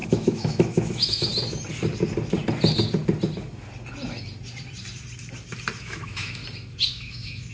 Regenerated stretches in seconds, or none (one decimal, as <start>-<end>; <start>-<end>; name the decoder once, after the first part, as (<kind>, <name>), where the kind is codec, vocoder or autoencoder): 0.0-1.3 (autoencoder, DAC-VAE); 5.8-6.4; 6.9-7.5